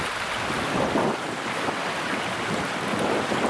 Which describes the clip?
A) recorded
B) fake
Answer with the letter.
A